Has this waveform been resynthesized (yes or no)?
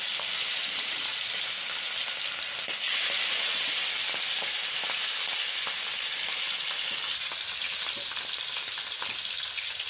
no